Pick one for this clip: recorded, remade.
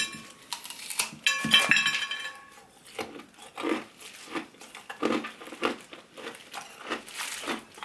recorded